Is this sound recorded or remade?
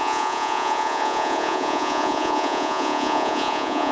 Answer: remade